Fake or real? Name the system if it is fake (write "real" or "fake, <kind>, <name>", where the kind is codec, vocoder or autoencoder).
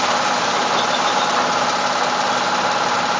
real